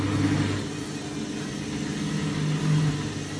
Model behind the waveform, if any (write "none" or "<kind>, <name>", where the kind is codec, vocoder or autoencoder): none